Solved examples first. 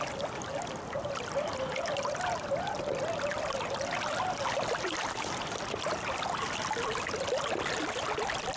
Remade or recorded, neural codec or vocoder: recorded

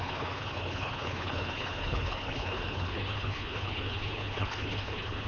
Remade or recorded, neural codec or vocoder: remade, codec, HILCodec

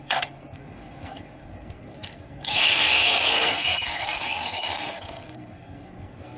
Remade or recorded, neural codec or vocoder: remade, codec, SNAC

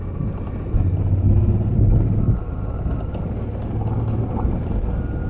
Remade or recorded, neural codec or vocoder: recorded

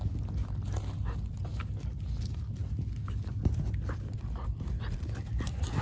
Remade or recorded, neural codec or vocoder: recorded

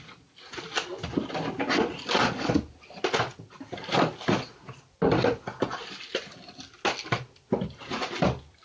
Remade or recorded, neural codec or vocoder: recorded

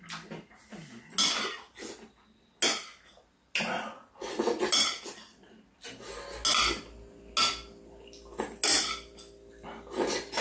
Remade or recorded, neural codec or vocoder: recorded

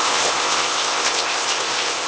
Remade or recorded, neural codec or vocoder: remade, codec, ZipCodec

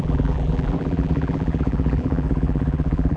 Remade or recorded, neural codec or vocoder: remade, vocoder, BigVGAN v2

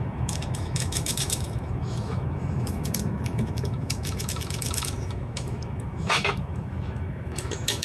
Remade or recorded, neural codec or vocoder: remade, autoencoder, DAC-VAE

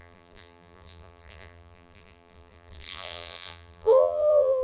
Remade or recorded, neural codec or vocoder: remade, vocoder, BigVGAN v2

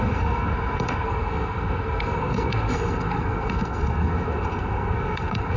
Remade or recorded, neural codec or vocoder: remade, codec, SNAC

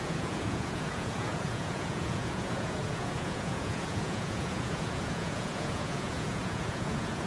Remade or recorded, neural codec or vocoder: remade, vocoder, Vocos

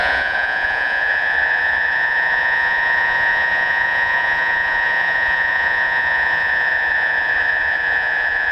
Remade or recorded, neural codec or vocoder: remade, vocoder, Vocos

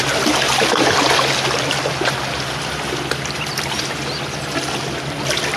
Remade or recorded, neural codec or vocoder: recorded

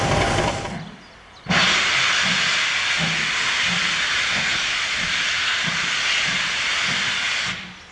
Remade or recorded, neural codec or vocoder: recorded